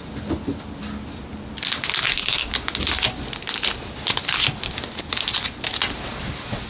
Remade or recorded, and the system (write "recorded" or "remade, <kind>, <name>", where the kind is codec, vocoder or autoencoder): recorded